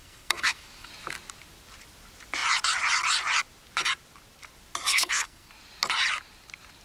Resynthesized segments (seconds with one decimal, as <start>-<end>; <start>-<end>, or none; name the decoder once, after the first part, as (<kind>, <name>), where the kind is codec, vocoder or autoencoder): 0.0-0.9 (codec, SNAC); 4.9-5.5